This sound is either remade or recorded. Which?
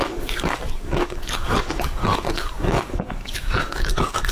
remade